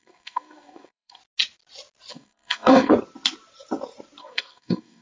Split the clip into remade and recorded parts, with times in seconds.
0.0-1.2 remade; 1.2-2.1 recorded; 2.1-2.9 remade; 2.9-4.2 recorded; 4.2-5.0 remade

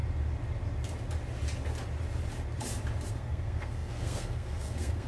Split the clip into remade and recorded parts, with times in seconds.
0.0-3.1 recorded; 3.1-5.1 remade

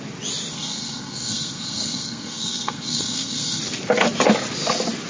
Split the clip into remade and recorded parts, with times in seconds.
0.0-0.5 recorded; 0.5-3.6 remade; 3.6-5.1 recorded

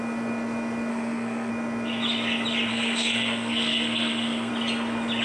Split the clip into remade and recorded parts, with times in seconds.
0.0-0.9 recorded; 0.9-1.5 remade; 1.5-2.7 recorded; 2.7-4.5 remade; 4.5-5.2 recorded